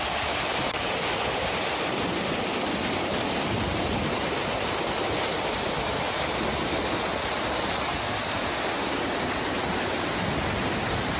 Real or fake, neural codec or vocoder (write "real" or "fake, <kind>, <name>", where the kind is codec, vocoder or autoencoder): real